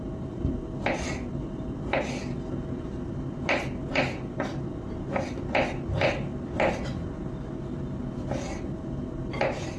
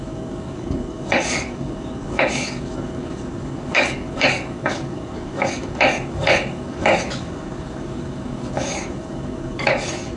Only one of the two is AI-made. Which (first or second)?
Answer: second